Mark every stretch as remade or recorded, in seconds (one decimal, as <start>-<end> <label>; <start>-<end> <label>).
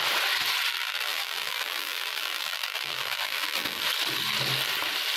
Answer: 0.0-0.7 recorded; 0.7-3.8 remade; 3.8-5.2 recorded